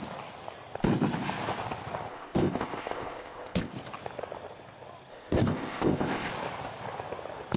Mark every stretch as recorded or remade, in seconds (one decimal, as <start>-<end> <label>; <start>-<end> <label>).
0.0-2.1 recorded; 2.1-3.7 remade; 3.7-5.1 recorded; 5.1-6.3 remade; 6.3-7.6 recorded